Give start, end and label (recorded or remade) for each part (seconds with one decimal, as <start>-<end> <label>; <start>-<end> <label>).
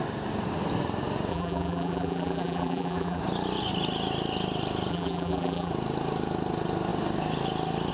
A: 0.0-1.3 recorded; 1.3-3.2 remade; 3.2-4.9 recorded; 4.9-5.7 remade; 5.7-7.9 recorded